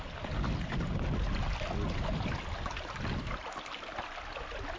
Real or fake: real